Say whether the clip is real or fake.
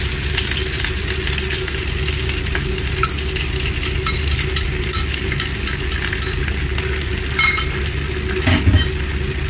real